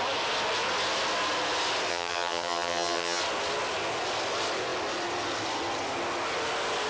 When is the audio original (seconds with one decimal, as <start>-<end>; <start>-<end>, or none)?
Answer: 0.0-1.9; 3.2-6.9